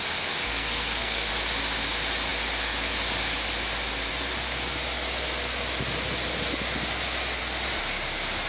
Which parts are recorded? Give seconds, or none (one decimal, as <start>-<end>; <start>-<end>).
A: 0.0-0.4; 1.3-8.5